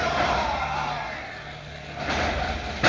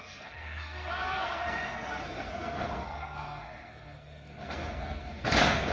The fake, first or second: second